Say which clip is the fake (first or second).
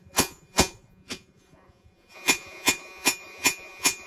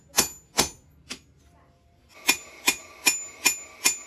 first